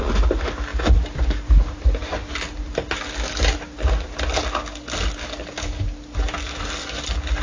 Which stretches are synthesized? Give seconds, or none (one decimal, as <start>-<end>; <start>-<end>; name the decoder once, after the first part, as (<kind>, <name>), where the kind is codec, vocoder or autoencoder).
none